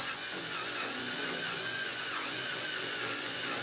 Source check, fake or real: fake